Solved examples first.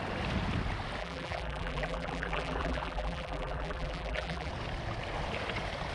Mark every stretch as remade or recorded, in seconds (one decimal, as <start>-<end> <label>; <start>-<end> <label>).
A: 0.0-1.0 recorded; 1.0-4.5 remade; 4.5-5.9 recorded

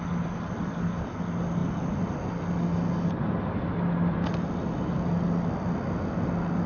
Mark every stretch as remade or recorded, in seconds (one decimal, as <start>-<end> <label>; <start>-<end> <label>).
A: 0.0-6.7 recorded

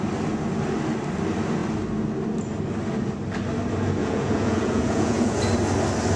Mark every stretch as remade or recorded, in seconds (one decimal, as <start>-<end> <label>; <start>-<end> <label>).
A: 0.0-4.0 recorded; 4.0-5.4 remade; 5.4-6.2 recorded